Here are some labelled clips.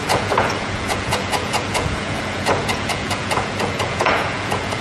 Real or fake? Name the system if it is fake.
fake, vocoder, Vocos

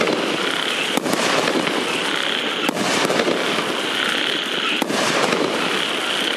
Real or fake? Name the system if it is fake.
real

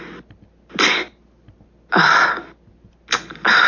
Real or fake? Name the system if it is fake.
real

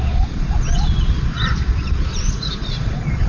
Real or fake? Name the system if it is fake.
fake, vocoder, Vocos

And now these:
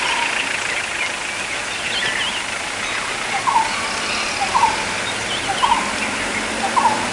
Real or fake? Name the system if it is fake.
real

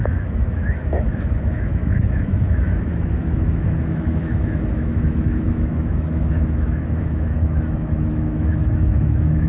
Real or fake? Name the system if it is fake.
fake, autoencoder, DAC-VAE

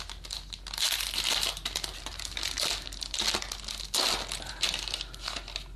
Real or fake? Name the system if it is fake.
real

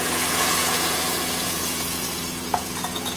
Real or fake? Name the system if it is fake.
fake, vocoder, Vocos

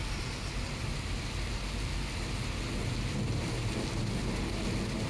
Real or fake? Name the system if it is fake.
real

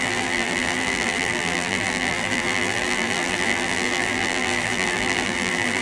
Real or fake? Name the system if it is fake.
fake, vocoder, BigVGAN v2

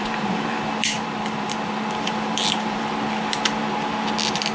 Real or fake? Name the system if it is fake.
fake, vocoder, BigVGAN v2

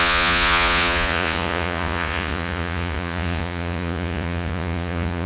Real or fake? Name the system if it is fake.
fake, vocoder, Vocos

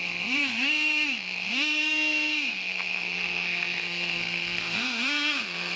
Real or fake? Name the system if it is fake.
fake, codec, SNAC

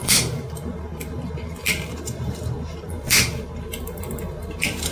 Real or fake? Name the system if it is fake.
fake, vocoder, BigVGAN v2